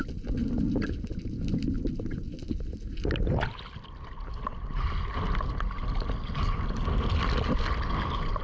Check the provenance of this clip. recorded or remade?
recorded